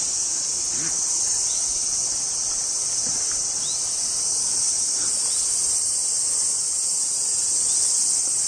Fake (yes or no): no